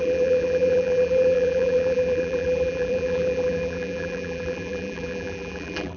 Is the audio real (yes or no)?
no